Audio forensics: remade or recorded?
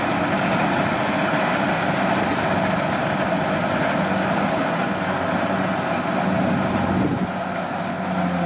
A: recorded